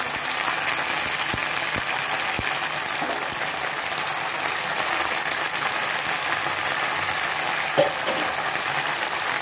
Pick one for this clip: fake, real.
real